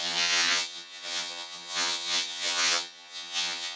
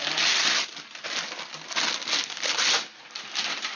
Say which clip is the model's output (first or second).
first